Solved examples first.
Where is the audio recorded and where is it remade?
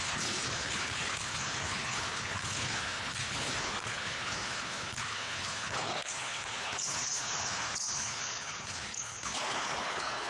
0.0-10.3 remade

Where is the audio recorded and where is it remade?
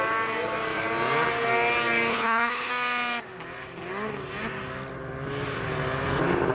0.0-2.1 recorded; 2.1-2.7 remade; 2.7-6.5 recorded